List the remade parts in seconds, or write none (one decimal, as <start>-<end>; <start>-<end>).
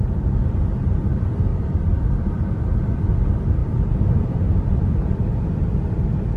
1.5-2.1; 3.6-5.6